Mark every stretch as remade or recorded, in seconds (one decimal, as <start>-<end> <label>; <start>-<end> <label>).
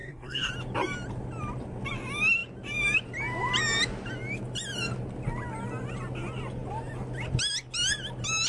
0.0-0.5 remade; 0.5-8.5 recorded